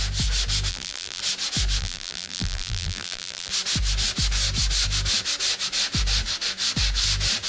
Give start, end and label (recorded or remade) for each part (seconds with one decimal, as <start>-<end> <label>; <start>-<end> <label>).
0.0-0.7 recorded; 0.7-1.2 remade; 1.2-1.8 recorded; 1.8-3.5 remade; 3.5-7.5 recorded